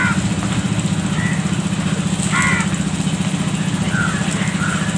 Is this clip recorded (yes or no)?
yes